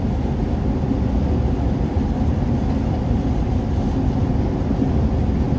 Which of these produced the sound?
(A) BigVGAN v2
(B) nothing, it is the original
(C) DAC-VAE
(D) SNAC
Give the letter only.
B